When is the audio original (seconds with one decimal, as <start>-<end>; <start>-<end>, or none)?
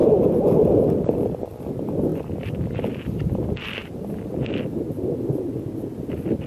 0.0-6.5